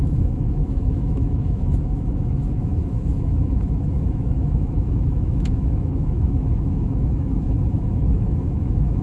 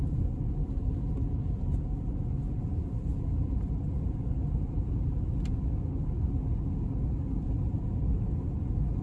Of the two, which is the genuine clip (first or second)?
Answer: second